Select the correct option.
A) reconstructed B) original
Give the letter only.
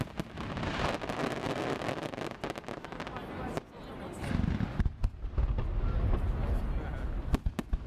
B